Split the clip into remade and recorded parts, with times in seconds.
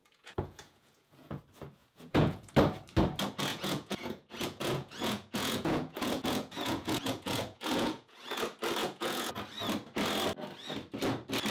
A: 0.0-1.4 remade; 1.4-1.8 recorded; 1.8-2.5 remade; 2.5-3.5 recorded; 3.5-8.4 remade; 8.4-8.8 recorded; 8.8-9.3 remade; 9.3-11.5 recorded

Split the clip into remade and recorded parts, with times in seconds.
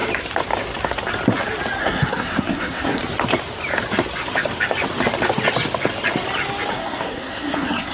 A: 0.0-1.8 recorded; 1.8-3.0 remade; 3.0-6.7 recorded; 6.7-7.9 remade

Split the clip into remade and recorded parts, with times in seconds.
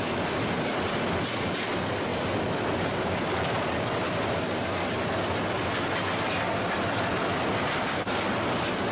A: 0.0-8.9 recorded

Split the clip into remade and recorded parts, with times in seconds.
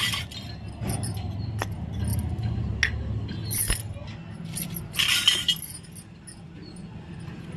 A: 0.0-7.6 recorded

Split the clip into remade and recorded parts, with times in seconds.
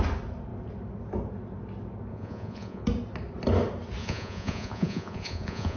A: 0.0-2.1 recorded; 2.1-2.8 remade; 2.8-4.0 recorded; 4.0-5.8 remade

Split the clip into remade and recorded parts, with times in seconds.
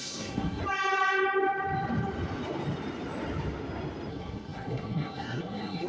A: 0.0-0.6 remade; 0.6-4.1 recorded; 4.1-5.9 remade